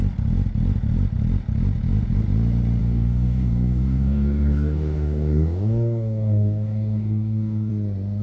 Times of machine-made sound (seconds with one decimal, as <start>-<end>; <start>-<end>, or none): 2.8-7.7